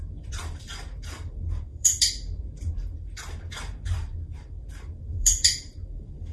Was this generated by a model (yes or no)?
yes